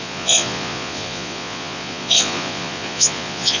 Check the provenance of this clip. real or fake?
fake